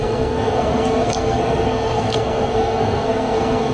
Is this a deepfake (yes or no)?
yes